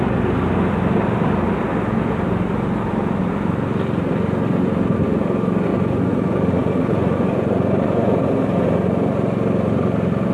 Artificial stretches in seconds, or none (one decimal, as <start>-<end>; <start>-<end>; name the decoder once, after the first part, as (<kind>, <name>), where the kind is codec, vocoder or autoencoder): 5.7-8.2 (vocoder, Vocos)